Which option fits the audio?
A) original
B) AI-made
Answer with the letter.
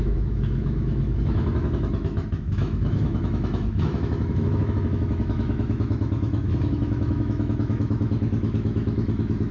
B